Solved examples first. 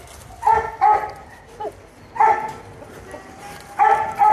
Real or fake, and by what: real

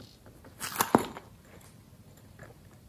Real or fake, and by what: real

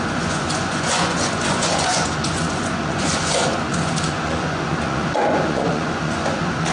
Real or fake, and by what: fake, vocoder, Vocos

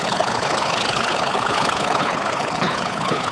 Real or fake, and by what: fake, codec, HILCodec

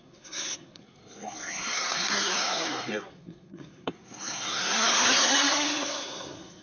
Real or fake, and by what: fake, codec, SNAC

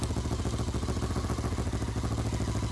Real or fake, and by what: real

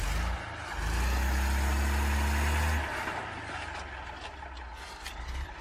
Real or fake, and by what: real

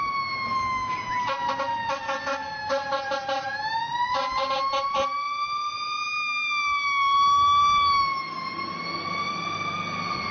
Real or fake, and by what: real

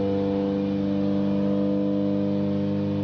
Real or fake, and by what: real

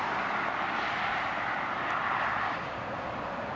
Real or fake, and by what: real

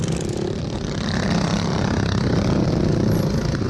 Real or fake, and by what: real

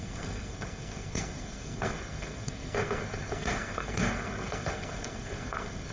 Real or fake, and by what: fake, codec, SNAC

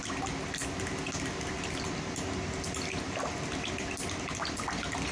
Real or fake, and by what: real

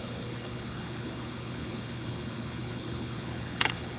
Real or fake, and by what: fake, codec, HILCodec